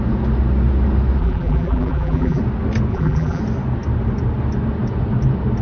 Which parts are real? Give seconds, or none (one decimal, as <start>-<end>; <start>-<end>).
0.0-1.2; 2.4-2.9; 3.4-5.6